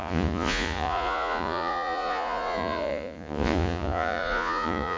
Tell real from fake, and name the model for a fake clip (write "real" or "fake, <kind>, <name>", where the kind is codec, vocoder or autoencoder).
fake, vocoder, Vocos